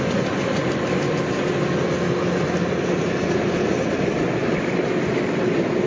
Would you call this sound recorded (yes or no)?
yes